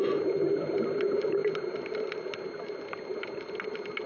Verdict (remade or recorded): recorded